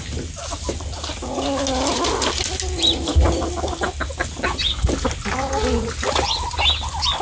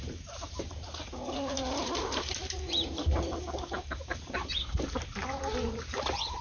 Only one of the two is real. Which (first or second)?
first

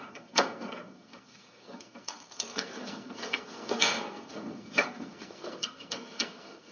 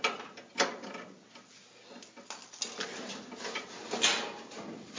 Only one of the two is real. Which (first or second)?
second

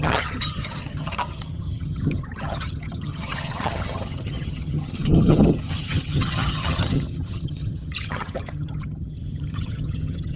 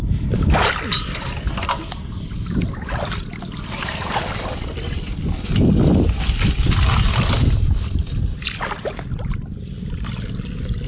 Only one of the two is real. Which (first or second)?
second